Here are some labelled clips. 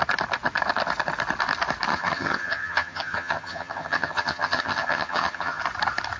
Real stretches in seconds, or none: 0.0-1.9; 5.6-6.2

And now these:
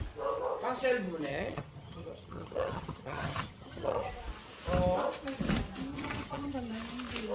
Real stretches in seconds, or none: 0.0-1.3; 4.1-5.9; 6.7-7.3

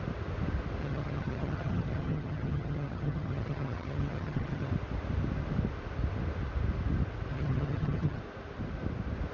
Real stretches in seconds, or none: 0.0-0.8; 4.7-7.3; 8.2-9.3